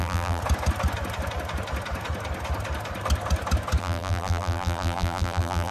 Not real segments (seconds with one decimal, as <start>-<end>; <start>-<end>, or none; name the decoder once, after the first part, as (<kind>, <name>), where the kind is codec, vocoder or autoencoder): 0.0-0.4 (vocoder, BigVGAN v2); 3.8-5.7